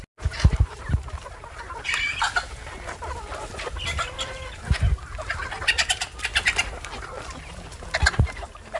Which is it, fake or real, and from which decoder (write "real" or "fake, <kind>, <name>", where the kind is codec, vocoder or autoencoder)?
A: real